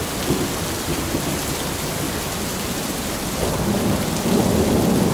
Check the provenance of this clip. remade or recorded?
recorded